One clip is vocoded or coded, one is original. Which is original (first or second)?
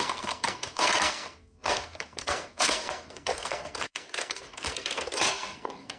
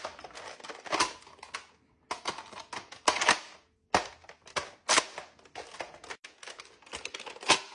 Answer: second